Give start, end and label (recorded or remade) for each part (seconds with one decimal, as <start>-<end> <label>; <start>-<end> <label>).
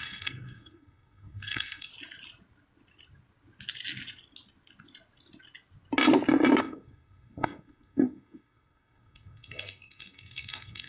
0.0-1.9 remade; 1.9-6.6 recorded; 6.6-10.9 remade